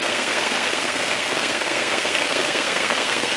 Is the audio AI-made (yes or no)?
yes